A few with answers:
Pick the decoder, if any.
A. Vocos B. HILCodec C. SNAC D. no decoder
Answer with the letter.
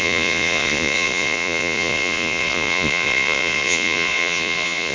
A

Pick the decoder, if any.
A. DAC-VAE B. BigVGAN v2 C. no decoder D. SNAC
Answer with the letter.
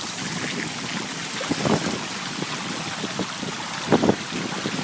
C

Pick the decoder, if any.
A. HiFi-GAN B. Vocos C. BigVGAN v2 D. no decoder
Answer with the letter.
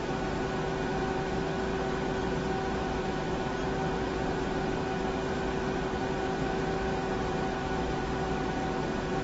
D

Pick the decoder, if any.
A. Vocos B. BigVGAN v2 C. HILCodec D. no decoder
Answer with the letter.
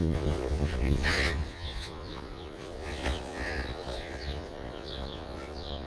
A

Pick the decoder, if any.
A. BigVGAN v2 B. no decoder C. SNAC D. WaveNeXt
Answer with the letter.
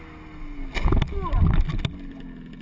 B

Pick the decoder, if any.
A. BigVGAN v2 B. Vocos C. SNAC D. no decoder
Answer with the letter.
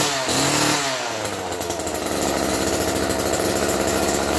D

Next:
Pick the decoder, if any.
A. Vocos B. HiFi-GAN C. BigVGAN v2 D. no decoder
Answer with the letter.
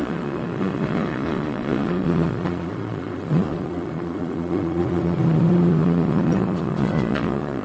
A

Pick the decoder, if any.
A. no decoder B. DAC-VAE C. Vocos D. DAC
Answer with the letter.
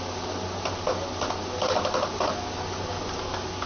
A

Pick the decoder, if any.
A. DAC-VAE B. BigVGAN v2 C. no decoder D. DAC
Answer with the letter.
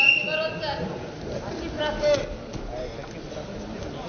C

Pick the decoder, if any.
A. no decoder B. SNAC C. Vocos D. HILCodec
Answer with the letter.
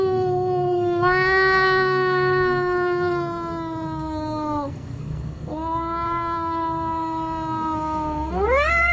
B